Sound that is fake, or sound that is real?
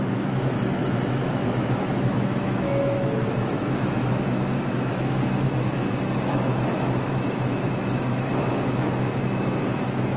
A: fake